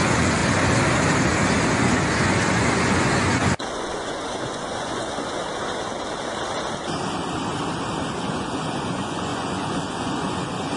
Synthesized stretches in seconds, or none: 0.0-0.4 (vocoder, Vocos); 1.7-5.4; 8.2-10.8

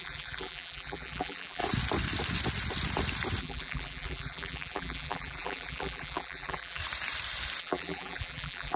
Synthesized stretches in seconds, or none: 0.0-1.6 (vocoder, BigVGAN v2); 3.4-6.8; 7.6-8.8